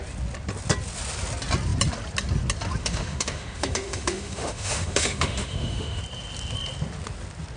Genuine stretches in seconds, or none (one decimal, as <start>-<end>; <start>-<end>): 0.0-2.8; 6.0-7.6